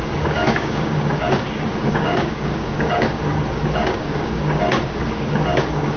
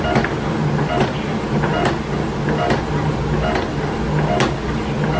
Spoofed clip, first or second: first